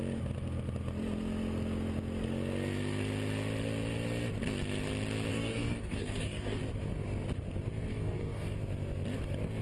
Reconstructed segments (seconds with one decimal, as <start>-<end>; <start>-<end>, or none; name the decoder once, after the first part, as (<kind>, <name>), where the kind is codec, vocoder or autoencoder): 5.3-6.6 (codec, DAC); 7.9-8.6